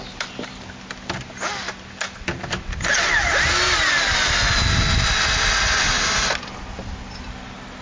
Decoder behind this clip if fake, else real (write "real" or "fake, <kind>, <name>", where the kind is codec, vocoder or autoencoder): real